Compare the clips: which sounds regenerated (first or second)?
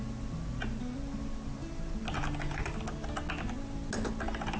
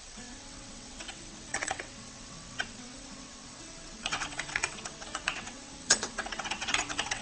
second